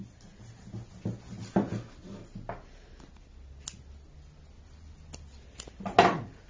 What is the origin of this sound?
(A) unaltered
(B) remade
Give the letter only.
A